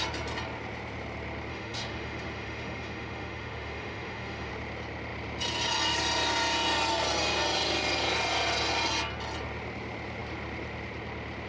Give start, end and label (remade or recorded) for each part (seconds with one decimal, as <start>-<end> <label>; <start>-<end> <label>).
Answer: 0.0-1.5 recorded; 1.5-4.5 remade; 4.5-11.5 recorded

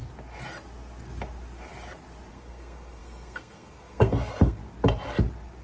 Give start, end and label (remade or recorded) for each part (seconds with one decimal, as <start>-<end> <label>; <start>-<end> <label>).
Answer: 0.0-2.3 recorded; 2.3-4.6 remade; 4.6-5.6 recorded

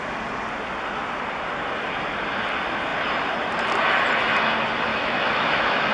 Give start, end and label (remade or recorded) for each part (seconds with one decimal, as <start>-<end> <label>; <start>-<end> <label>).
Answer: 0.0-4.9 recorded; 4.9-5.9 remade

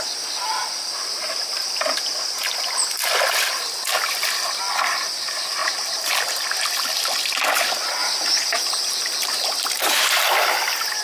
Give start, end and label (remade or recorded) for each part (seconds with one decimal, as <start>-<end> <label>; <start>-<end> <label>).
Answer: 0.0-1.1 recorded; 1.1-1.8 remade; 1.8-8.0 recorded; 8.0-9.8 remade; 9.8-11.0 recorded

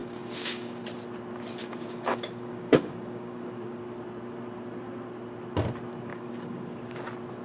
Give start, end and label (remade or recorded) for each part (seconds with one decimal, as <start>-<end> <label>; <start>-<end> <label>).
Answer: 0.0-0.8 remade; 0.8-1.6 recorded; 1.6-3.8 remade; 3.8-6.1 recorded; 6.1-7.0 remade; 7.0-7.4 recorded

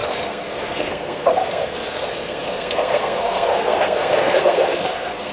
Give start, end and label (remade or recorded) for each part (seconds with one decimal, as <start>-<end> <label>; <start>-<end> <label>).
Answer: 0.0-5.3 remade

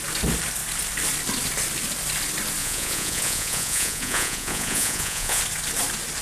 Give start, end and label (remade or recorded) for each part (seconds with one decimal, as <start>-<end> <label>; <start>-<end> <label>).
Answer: 0.0-2.6 recorded; 2.6-5.4 remade; 5.4-6.2 recorded

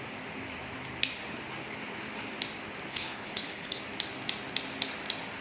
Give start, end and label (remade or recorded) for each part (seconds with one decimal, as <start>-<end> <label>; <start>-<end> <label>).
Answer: 0.0-2.9 recorded; 2.9-3.8 remade; 3.8-5.4 recorded